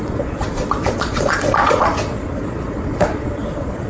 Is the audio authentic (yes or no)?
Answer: no